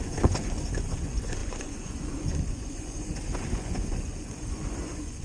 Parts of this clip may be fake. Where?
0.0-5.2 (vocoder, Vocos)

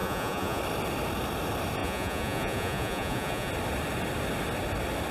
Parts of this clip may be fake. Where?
0.0-0.6 (vocoder, Vocos); 1.8-3.5

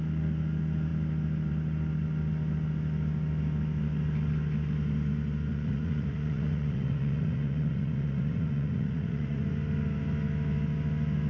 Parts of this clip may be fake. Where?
5.5-9.4 (vocoder, Vocos)